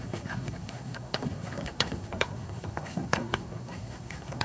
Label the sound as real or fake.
fake